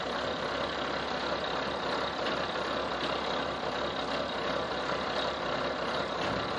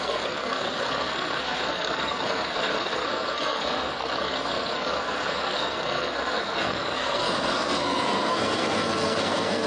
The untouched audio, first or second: first